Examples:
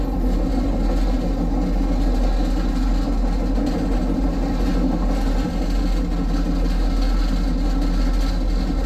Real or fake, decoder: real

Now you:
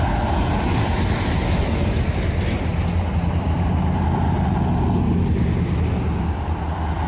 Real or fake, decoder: real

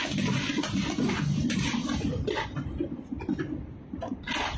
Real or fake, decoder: real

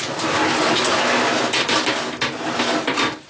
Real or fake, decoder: real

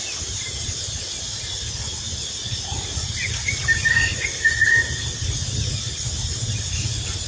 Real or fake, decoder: real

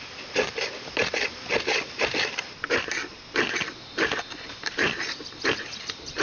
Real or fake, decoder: real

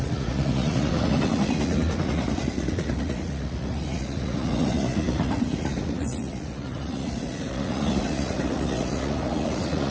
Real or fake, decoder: fake, vocoder, Vocos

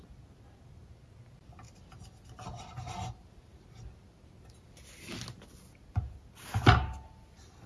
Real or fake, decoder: real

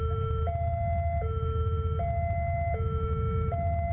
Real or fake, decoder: real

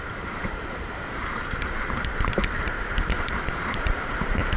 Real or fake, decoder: fake, vocoder, BigVGAN v2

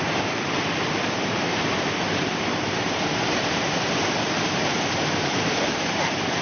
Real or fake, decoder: fake, vocoder, BigVGAN v2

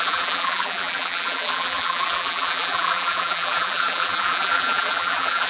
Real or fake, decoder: fake, vocoder, BigVGAN v2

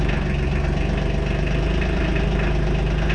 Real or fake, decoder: real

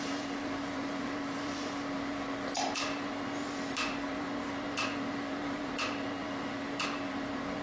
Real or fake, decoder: fake, vocoder, BigVGAN v2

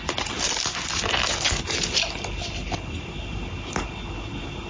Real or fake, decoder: real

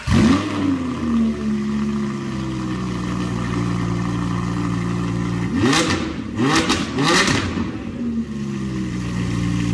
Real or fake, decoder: real